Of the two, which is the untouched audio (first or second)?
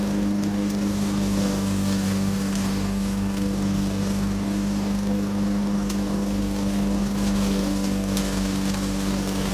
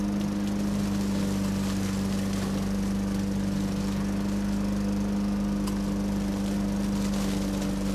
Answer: second